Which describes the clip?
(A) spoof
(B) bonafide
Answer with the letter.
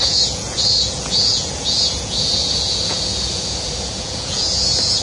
A